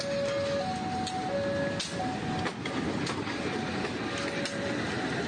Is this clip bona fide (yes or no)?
yes